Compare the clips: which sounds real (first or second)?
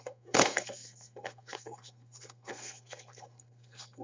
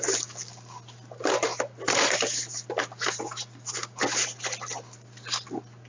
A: second